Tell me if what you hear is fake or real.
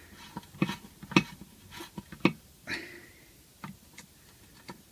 real